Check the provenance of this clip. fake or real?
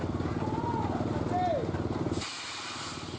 real